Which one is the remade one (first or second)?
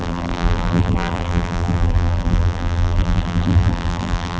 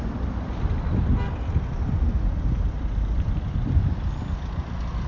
first